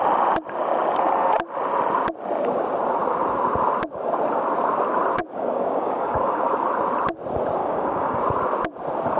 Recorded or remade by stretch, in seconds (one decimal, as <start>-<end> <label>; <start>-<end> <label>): 0.0-5.2 recorded; 5.2-6.4 remade; 6.4-7.6 recorded; 7.6-8.2 remade; 8.2-9.2 recorded